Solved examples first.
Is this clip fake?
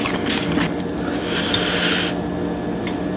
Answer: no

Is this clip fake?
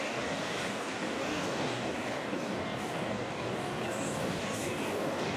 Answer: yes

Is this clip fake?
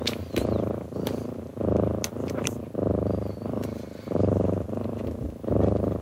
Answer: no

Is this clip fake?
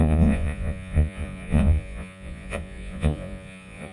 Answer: yes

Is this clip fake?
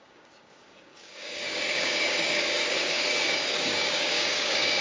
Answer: yes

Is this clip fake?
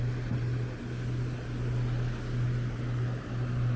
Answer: no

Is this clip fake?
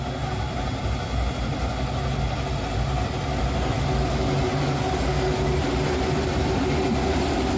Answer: no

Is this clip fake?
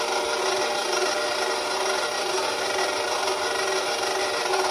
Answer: no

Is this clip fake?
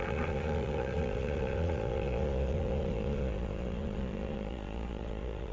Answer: yes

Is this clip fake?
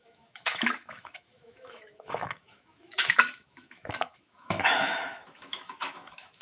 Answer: yes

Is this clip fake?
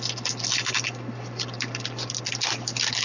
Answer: no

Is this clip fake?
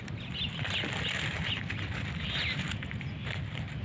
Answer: no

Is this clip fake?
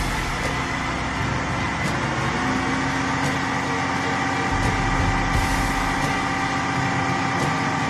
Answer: no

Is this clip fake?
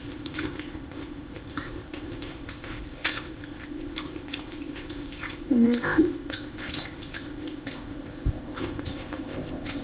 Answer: yes